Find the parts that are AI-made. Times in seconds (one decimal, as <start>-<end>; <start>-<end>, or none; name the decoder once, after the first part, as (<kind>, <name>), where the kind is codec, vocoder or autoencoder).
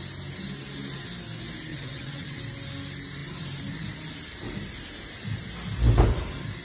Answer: 1.7-2.4 (vocoder, WaveNeXt)